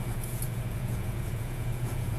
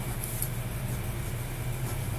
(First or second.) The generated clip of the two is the first